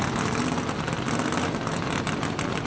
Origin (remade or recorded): recorded